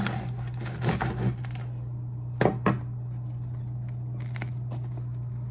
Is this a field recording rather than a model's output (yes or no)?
yes